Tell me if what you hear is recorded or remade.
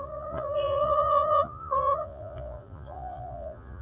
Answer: remade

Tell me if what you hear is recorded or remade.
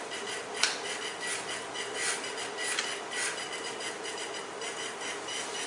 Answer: recorded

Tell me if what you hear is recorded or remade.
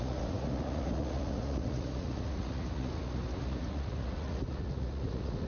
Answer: remade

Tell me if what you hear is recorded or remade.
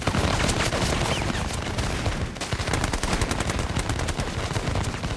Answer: recorded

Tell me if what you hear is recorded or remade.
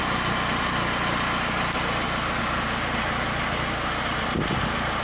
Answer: recorded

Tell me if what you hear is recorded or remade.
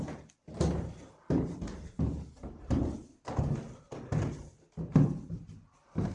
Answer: recorded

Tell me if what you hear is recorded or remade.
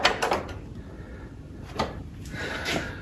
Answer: recorded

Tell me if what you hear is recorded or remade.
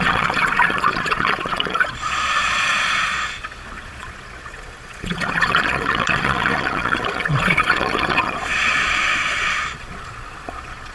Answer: remade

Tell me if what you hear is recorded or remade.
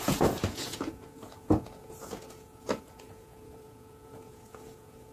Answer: remade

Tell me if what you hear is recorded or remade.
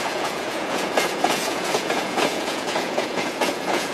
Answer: remade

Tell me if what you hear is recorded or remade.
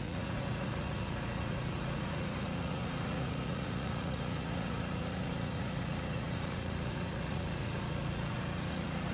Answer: remade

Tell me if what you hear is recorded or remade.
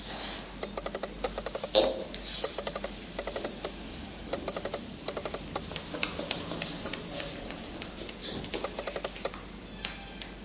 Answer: recorded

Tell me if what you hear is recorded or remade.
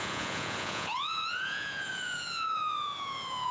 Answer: remade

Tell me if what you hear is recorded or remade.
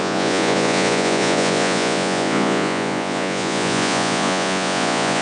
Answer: remade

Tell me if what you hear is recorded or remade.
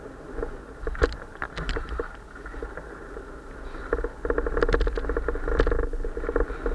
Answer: recorded